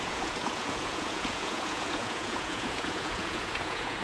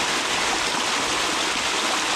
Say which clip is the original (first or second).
second